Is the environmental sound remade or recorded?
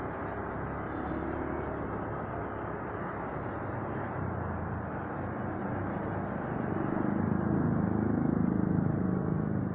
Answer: recorded